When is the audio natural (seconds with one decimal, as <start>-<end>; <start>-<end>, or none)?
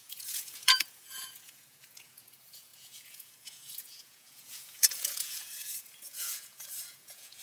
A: none